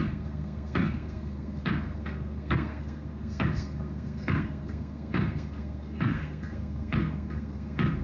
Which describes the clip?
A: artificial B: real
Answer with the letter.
A